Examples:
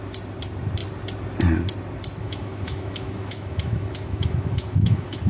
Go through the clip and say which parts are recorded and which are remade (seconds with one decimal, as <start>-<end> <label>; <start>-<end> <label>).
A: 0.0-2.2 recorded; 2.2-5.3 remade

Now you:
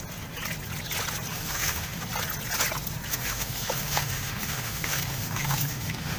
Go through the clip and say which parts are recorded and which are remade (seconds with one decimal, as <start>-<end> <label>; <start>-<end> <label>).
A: 0.0-1.3 recorded; 1.3-2.0 remade; 2.0-3.1 recorded; 3.1-6.2 remade

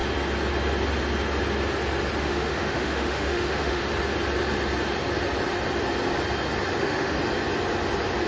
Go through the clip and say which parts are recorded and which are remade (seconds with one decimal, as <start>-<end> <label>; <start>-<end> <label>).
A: 0.0-2.2 recorded; 2.2-3.8 remade; 3.8-6.8 recorded; 6.8-7.2 remade; 7.2-8.3 recorded